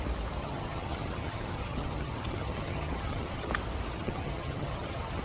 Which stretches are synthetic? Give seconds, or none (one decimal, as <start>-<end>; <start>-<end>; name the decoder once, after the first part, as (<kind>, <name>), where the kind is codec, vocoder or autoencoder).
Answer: 0.4-3.5 (vocoder, HiFi-GAN); 3.9-5.2